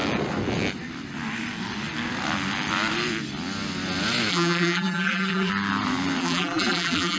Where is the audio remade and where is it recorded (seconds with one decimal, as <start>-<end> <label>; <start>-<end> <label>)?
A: 0.0-4.3 recorded; 4.3-5.5 remade; 5.5-6.2 recorded; 6.2-7.2 remade